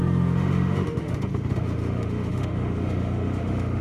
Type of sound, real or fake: fake